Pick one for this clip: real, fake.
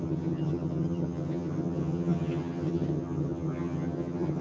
fake